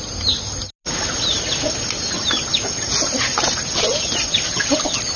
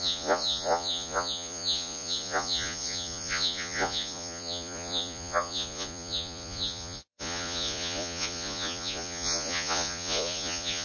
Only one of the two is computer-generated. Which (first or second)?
second